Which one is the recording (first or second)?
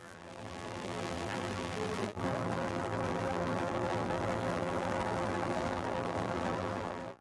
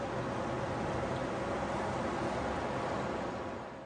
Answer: second